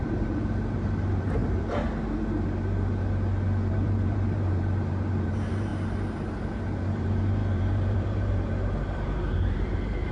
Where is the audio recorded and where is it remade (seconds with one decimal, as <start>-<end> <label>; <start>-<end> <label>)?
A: 0.0-1.4 remade; 1.4-3.7 recorded; 3.7-5.7 remade; 5.7-6.5 recorded; 6.5-10.1 remade